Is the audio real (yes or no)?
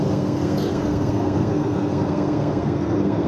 no